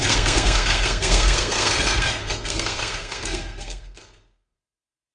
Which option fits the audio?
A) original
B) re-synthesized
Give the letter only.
B